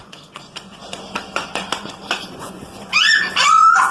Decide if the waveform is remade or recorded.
remade